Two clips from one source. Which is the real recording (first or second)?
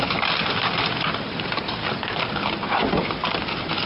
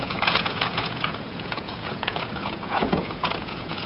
first